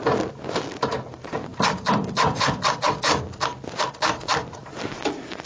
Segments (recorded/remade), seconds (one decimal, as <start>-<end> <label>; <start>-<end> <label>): 0.0-5.5 recorded